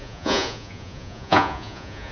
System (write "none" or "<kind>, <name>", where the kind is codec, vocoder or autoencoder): vocoder, Vocos